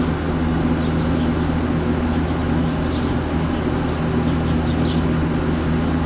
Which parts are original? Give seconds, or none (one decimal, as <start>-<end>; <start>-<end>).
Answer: 0.0-6.1